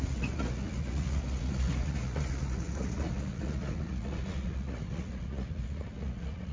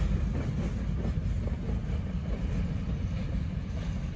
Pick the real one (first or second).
second